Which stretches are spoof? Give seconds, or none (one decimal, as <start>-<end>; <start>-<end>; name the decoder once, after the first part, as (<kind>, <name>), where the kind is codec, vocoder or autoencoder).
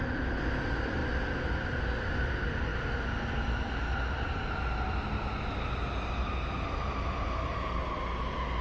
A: none